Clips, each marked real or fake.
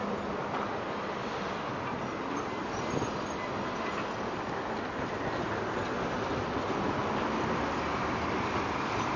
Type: real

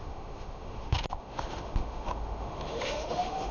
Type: fake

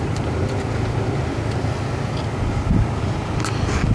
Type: real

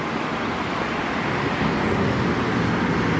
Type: real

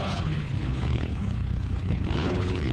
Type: fake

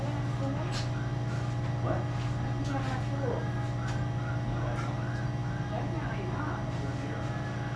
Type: real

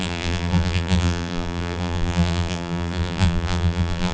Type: fake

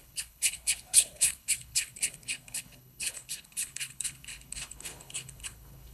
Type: fake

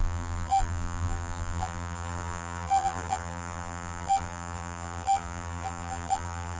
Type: fake